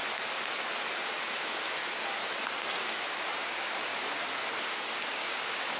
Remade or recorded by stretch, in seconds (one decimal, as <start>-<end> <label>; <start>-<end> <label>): 0.0-3.5 recorded; 3.5-3.9 remade; 3.9-5.0 recorded; 5.0-5.8 remade